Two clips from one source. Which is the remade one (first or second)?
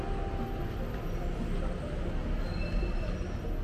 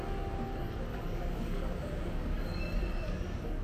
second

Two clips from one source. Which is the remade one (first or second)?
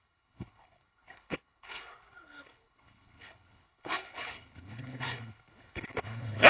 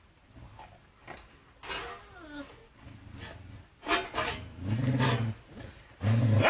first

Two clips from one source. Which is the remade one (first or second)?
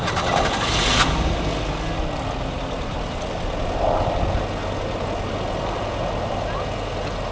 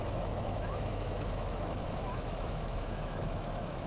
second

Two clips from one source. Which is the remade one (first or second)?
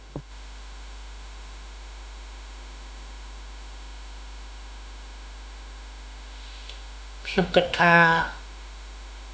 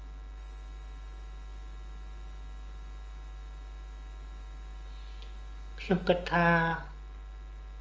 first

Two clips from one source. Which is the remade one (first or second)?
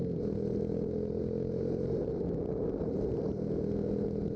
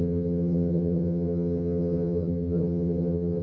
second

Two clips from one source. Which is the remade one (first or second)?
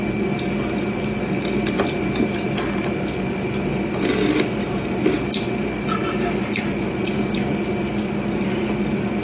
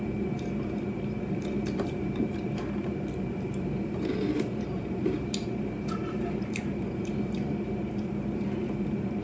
second